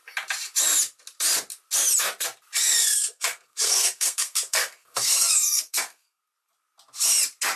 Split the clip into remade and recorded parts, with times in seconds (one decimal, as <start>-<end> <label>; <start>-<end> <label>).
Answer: 0.0-2.8 recorded; 2.8-6.2 remade; 6.2-7.6 recorded